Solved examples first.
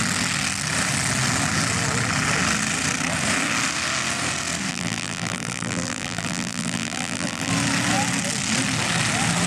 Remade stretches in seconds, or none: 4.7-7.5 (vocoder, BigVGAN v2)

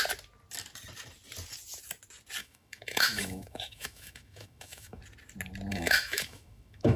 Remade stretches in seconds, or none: 2.4-5.0 (autoencoder, DAC-VAE); 5.7-7.0